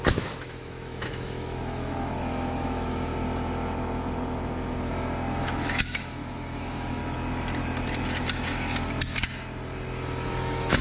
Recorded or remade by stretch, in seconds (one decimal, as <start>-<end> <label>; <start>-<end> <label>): 0.0-3.1 remade; 3.1-5.4 recorded; 5.4-7.0 remade; 7.0-10.3 recorded; 10.3-10.8 remade